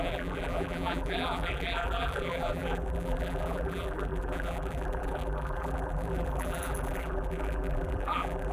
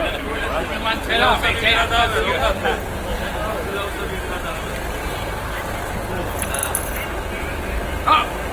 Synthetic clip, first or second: first